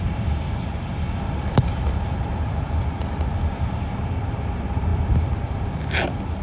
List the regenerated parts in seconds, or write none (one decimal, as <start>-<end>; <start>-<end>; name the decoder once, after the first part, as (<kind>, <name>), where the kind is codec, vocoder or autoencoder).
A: none

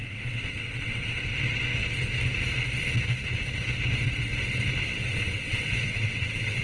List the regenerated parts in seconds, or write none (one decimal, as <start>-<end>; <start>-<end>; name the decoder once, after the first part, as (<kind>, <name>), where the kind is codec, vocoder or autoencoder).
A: 0.0-1.2 (vocoder, WaveNeXt); 5.1-6.6

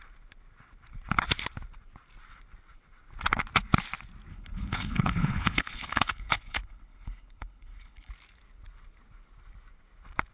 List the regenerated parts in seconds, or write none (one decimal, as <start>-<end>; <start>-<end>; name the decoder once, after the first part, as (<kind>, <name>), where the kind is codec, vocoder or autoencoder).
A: 4.3-8.1 (codec, HILCodec)

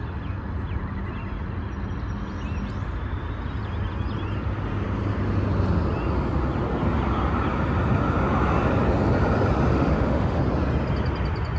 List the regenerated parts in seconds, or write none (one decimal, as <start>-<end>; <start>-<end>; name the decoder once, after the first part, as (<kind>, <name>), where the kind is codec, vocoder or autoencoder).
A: 9.7-10.4 (autoencoder, DAC-VAE)